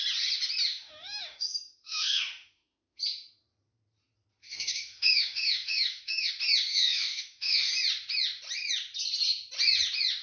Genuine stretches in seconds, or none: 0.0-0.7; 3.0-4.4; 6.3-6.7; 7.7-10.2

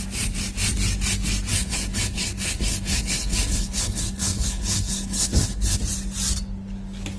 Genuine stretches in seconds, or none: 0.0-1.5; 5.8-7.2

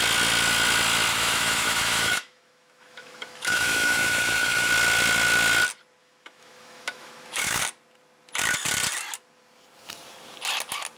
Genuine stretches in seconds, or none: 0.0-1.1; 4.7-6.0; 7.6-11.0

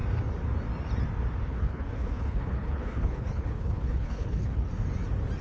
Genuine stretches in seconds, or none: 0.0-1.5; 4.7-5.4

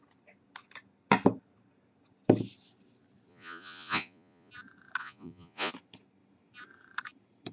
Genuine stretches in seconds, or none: 0.0-3.3; 4.5-5.0; 5.7-7.5

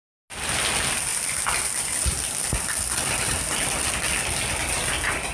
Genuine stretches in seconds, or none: 0.0-1.1; 3.8-5.3

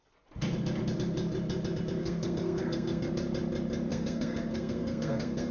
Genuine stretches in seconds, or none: 0.0-2.0; 3.1-3.9